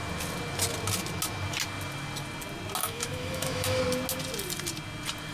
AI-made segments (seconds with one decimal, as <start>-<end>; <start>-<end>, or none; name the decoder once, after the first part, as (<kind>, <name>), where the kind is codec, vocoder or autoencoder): 2.8-3.8 (autoencoder, DAC-VAE)